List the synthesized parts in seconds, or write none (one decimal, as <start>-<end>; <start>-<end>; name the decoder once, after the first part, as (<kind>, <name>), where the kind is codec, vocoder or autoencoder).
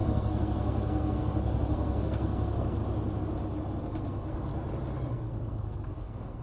0.0-2.8 (codec, SNAC); 3.8-4.5; 5.1-6.4